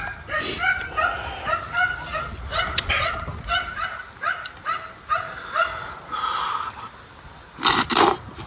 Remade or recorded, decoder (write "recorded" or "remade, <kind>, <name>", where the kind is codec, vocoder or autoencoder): recorded